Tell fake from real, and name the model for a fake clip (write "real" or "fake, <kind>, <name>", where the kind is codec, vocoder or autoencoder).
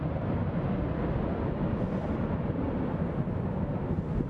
real